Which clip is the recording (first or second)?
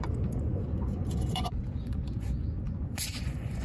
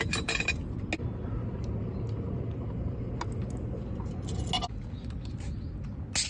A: second